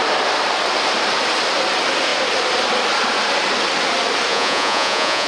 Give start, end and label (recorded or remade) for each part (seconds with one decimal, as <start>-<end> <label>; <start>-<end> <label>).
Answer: 0.0-4.3 recorded; 4.3-5.3 remade